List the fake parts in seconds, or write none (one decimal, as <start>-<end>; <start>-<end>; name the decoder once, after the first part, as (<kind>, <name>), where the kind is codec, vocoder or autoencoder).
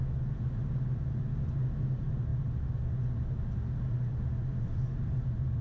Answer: none